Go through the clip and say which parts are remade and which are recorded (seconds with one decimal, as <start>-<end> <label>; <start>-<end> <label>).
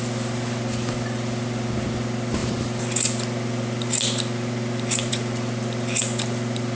0.0-6.8 recorded